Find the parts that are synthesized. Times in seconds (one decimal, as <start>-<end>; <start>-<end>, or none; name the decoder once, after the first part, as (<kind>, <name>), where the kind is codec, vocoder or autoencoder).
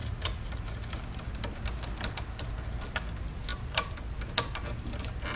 0.0-1.0 (vocoder, Vocos)